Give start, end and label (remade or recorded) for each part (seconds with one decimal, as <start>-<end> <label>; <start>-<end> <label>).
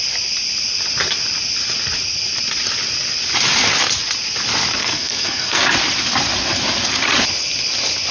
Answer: 0.0-4.8 recorded; 4.8-5.6 remade; 5.6-8.1 recorded